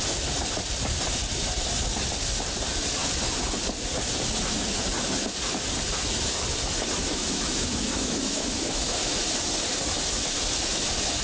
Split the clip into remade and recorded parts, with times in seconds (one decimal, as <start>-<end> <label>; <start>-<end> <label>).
0.0-7.0 recorded; 7.0-9.2 remade; 9.2-11.2 recorded